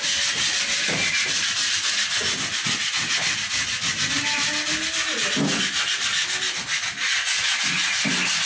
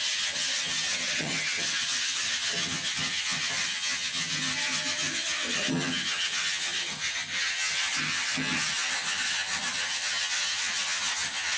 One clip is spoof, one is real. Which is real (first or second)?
first